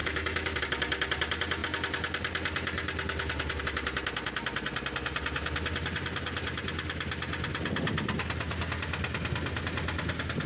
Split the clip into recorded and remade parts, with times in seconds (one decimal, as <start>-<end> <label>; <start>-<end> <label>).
0.0-0.6 remade; 0.6-10.5 recorded